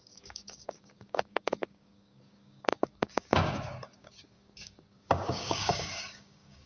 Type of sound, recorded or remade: remade